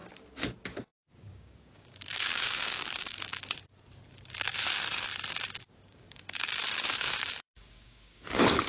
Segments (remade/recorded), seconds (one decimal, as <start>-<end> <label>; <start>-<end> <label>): 0.0-1.2 recorded; 1.2-3.4 remade; 3.4-5.7 recorded; 5.7-8.7 remade